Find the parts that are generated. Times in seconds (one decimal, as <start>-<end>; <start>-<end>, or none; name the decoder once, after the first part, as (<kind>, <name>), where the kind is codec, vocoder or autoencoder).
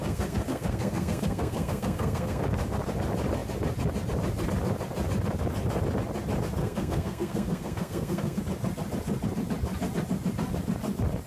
0.0-2.4 (codec, SNAC); 6.6-8.4